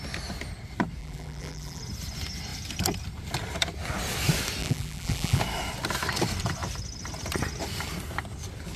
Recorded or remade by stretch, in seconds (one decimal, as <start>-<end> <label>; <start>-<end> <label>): 0.0-1.0 recorded; 1.0-1.8 remade; 1.8-4.6 recorded; 4.6-5.4 remade; 5.4-8.8 recorded

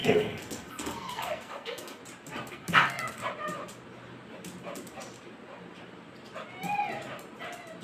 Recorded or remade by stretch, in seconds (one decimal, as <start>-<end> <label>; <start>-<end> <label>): 0.0-2.0 remade; 2.0-2.5 recorded; 2.5-3.2 remade; 3.2-7.8 recorded

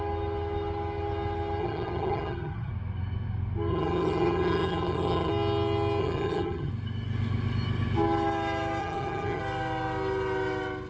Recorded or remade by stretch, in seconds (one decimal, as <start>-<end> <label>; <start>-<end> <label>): 0.0-1.6 recorded; 1.6-2.7 remade; 2.7-3.7 recorded; 3.7-5.3 remade; 5.3-6.0 recorded; 6.0-6.7 remade; 6.7-8.8 recorded; 8.8-9.4 remade; 9.4-10.9 recorded

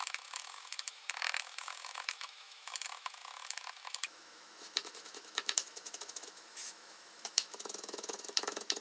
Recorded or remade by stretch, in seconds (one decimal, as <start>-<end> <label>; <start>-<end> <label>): 0.0-8.8 remade

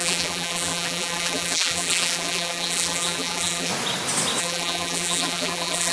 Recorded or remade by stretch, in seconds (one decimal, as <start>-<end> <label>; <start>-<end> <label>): 0.0-3.7 remade; 3.7-4.4 recorded; 4.4-5.9 remade

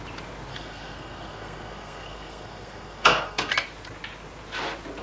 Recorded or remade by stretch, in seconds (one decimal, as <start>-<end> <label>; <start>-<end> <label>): 0.0-0.5 recorded; 0.5-3.5 remade; 3.5-5.0 recorded

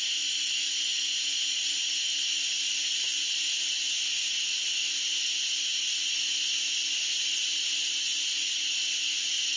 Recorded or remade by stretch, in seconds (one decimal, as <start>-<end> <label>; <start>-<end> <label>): 0.0-9.6 recorded